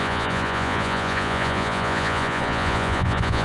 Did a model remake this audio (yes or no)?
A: yes